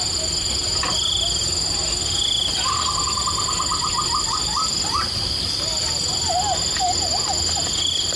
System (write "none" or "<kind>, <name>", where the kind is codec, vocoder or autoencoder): none